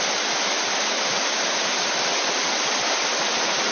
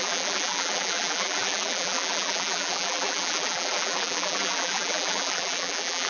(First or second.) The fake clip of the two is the second